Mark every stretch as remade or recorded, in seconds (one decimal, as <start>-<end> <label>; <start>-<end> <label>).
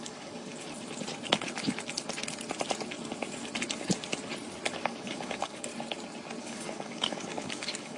0.0-0.5 remade; 0.5-4.8 recorded; 4.8-5.7 remade; 5.7-6.4 recorded; 6.4-8.0 remade